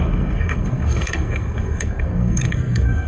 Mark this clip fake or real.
fake